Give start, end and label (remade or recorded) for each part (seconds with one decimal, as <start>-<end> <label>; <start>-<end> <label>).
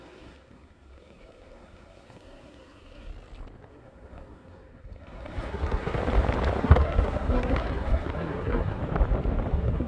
0.0-3.1 remade; 3.1-3.7 recorded; 3.7-6.0 remade; 6.0-6.6 recorded; 6.6-8.8 remade; 8.8-9.5 recorded; 9.5-9.9 remade